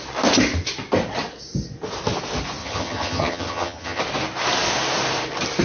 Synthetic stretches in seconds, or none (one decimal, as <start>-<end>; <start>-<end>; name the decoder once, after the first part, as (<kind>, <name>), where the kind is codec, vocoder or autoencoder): 2.6-4.0 (vocoder, HiFi-GAN)